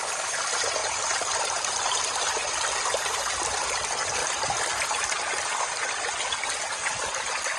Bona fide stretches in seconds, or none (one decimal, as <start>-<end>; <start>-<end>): 0.0-0.8; 1.4-7.6